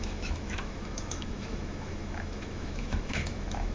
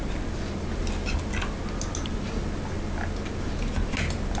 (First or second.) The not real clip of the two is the first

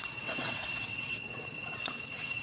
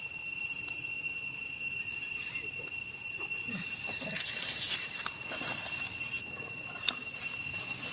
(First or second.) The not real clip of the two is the first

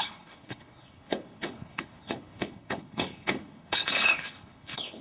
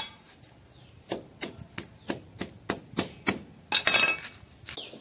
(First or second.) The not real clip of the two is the first